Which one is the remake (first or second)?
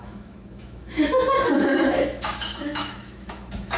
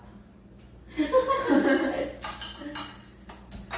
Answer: first